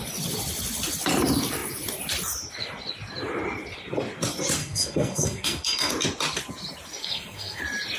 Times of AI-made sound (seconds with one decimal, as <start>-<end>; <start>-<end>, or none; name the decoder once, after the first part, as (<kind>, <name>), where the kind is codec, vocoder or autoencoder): 4.6-5.9 (codec, SNAC); 7.0-7.6